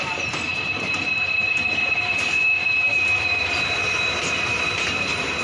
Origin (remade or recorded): remade